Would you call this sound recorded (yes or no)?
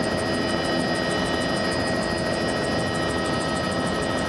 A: yes